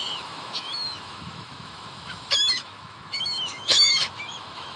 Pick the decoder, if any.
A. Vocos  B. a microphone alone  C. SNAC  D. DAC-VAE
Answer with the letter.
D